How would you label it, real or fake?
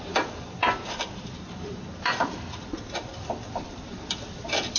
fake